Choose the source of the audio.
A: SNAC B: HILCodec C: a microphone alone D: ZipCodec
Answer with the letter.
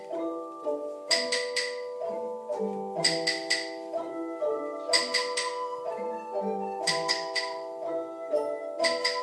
C